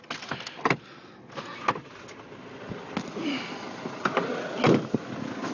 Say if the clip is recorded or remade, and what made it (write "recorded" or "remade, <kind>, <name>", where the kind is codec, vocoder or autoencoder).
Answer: recorded